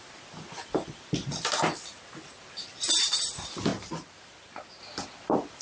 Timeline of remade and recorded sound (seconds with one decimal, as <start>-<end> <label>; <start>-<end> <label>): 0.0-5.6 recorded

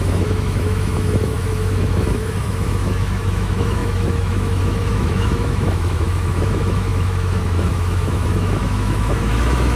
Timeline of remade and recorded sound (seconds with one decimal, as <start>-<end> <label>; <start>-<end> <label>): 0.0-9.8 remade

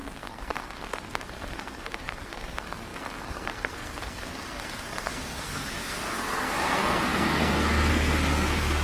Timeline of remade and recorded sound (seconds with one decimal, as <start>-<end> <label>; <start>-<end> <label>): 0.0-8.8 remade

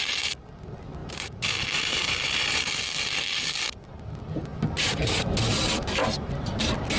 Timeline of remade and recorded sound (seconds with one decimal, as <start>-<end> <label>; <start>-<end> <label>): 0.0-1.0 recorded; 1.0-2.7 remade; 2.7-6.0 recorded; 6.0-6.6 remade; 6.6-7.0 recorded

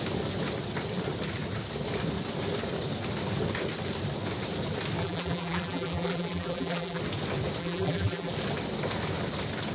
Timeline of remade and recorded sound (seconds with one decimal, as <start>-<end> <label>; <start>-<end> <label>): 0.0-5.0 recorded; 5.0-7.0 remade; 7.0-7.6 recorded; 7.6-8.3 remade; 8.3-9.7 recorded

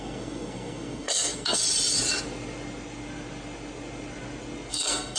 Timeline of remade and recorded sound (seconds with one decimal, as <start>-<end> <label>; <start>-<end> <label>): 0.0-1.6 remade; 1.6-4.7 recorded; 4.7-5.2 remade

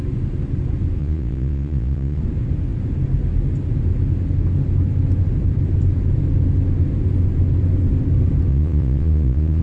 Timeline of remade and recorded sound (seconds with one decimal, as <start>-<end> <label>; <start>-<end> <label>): 0.0-1.0 recorded; 1.0-2.2 remade; 2.2-8.5 recorded; 8.5-9.6 remade

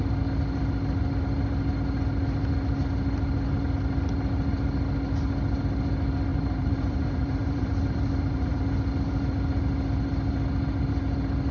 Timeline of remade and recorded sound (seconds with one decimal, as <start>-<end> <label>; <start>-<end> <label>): 0.0-6.3 recorded; 6.3-8.6 remade; 8.6-11.5 recorded